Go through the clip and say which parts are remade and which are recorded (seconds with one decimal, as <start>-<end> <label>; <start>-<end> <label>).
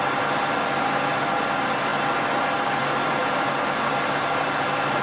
0.0-5.0 recorded